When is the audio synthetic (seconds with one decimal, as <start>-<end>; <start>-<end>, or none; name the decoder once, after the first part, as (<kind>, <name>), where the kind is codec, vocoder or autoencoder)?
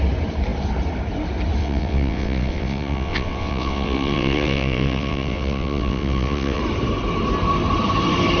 1.6-6.6 (vocoder, WaveNeXt)